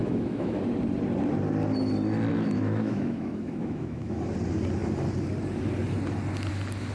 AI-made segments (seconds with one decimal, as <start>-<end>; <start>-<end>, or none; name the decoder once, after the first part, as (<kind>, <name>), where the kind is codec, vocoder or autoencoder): 0.0-0.6 (autoencoder, DAC-VAE); 2.3-4.2